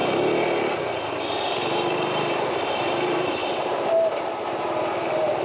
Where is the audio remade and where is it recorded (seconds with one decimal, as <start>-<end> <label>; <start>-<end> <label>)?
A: 0.0-1.3 recorded; 1.3-3.4 remade; 3.4-4.1 recorded; 4.1-5.4 remade